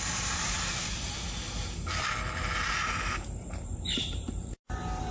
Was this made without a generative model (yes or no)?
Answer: no